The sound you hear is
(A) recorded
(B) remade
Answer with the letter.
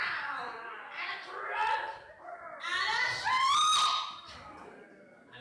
A